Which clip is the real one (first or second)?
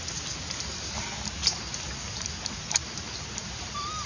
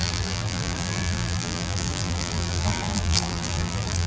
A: first